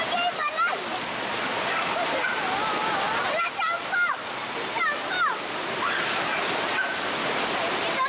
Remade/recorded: recorded